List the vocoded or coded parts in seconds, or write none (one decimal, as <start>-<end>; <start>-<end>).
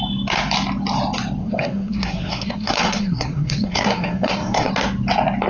1.4-4.7